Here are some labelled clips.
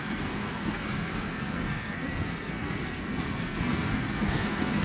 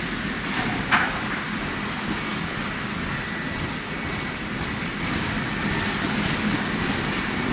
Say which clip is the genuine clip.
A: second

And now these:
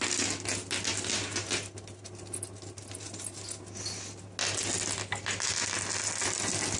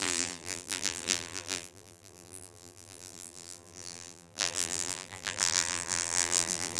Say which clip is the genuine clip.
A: first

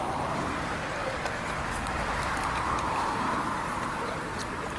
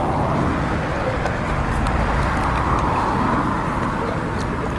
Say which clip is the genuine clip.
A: second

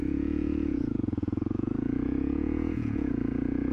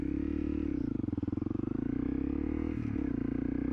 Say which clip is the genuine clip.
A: second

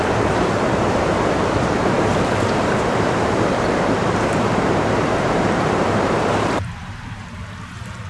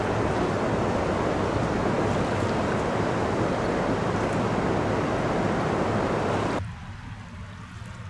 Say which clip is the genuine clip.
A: second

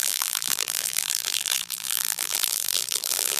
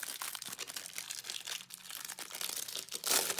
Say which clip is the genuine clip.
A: second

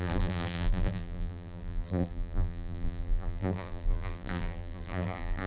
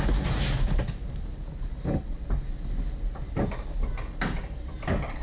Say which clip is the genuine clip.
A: second